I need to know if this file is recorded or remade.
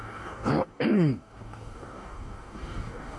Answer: remade